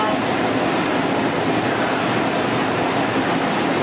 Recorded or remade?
recorded